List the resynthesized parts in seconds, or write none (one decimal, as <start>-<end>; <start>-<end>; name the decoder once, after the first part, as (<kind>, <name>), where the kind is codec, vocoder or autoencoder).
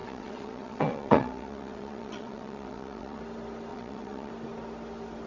0.0-3.2 (vocoder, WaveNeXt); 3.7-4.3